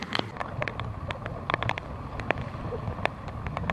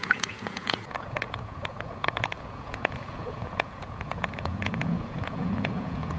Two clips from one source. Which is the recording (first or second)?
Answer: first